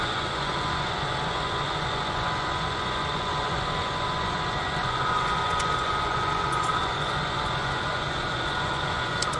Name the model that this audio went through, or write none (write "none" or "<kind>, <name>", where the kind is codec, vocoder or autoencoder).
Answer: vocoder, Vocos